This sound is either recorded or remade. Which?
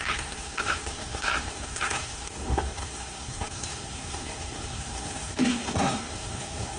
remade